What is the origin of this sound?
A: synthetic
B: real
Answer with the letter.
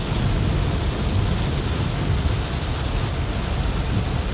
B